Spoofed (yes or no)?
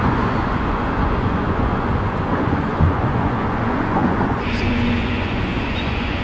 yes